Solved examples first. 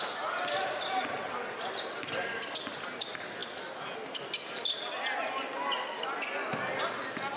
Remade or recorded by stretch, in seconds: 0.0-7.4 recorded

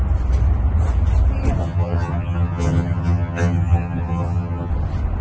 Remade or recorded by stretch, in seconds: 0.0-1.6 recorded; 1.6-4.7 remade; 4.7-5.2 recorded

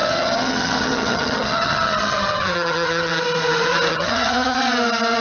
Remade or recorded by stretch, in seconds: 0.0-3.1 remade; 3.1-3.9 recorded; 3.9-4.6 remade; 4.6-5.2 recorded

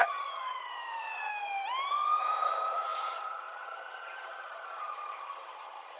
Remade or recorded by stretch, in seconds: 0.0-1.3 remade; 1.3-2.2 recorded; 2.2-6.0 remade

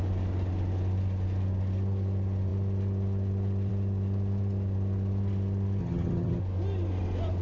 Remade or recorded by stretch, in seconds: 0.0-5.8 recorded; 5.8-6.4 remade; 6.4-7.4 recorded

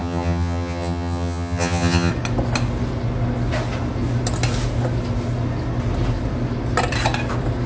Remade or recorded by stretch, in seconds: 0.0-2.1 remade; 2.1-7.7 recorded

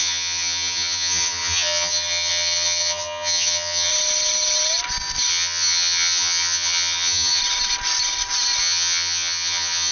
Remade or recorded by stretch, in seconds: 0.0-3.9 remade; 3.9-5.3 recorded; 5.3-7.4 remade; 7.4-8.6 recorded; 8.6-9.9 remade